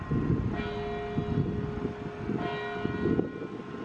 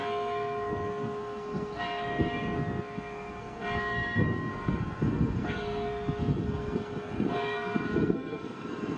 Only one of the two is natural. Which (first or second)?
first